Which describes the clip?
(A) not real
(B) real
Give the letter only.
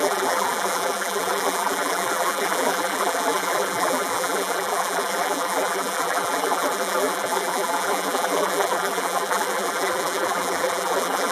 A